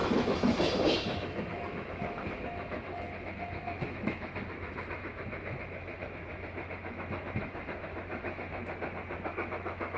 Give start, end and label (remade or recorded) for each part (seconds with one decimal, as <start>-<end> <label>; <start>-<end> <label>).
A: 0.0-8.6 remade; 8.6-9.3 recorded; 9.3-10.0 remade